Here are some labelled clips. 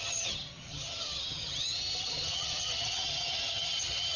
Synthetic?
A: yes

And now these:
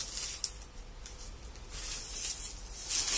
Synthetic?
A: no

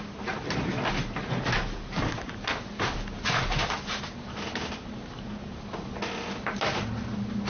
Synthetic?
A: no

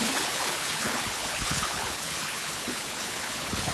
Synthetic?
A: yes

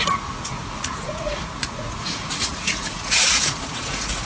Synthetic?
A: yes